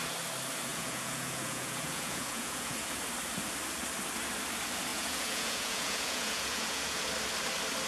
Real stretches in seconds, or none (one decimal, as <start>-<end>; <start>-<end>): 0.0-0.7; 3.0-4.9; 7.1-7.9